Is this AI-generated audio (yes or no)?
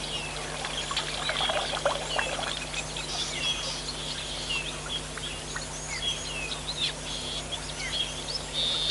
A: no